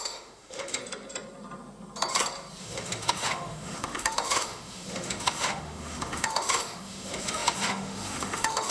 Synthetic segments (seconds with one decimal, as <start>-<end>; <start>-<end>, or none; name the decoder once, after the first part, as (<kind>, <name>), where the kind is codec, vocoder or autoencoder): 0.0-0.8 (autoencoder, DAC-VAE); 2.6-8.7